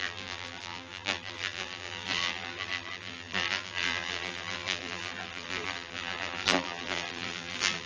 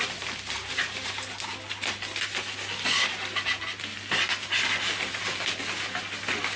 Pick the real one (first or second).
second